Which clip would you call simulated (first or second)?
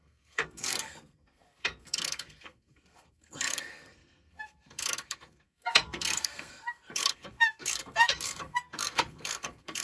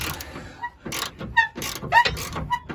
first